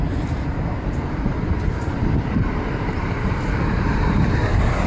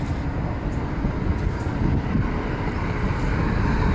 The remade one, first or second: first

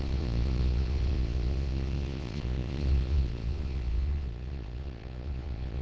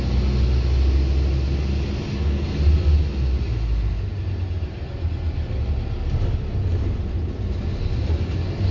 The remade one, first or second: first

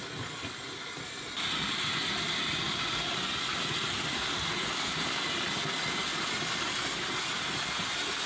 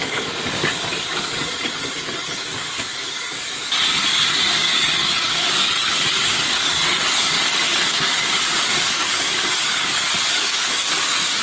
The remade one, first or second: second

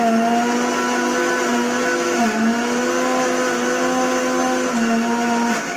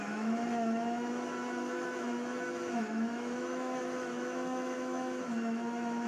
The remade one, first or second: second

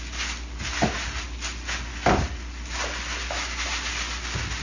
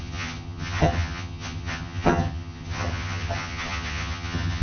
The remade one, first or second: second